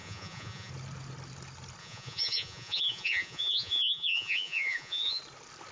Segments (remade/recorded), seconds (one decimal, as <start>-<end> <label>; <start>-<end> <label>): 0.0-0.7 remade; 0.7-1.8 recorded; 1.8-5.2 remade; 5.2-5.7 recorded

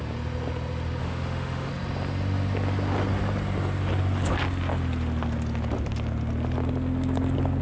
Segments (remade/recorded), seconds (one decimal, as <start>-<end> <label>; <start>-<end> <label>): 0.0-1.0 recorded; 1.0-1.7 remade; 1.7-7.6 recorded

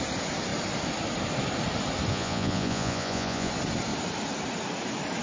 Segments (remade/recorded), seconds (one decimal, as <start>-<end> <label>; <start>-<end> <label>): 0.0-2.1 recorded; 2.1-3.5 remade; 3.5-5.2 recorded